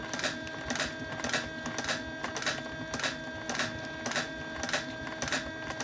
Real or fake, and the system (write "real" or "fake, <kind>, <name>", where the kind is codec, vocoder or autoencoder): real